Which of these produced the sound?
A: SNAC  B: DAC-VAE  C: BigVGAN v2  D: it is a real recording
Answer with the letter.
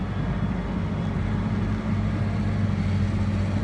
D